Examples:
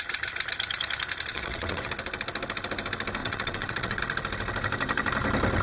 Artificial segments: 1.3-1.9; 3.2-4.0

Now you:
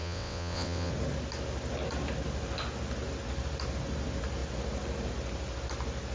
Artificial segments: 0.0-0.9